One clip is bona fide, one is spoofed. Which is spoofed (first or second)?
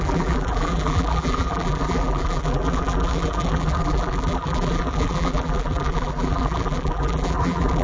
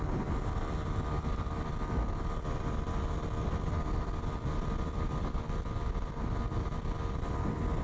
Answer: first